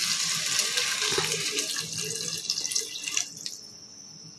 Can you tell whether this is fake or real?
real